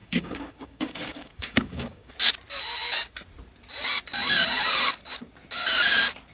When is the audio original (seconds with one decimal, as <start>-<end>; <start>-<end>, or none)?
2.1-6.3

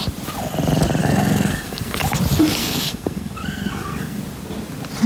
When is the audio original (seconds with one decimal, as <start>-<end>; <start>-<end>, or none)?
0.0-1.0; 2.0-2.6; 4.2-5.1

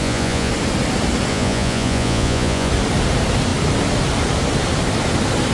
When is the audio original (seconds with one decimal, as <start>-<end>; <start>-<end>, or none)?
0.5-1.3; 2.7-5.5

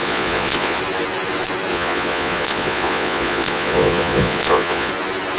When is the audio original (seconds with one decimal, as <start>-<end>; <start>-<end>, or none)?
0.8-1.7; 4.9-5.4

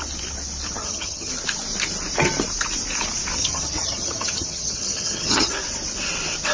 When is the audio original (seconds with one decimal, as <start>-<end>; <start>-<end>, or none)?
0.0-0.8; 1.3-3.4; 5.5-6.5